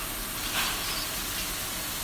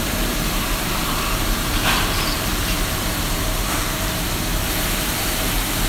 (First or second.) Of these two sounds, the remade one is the second